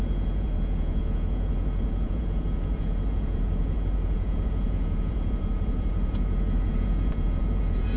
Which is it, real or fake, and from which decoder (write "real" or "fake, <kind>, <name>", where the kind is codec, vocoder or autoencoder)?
fake, vocoder, Vocos